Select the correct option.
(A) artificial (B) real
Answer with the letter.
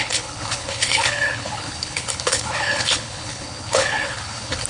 A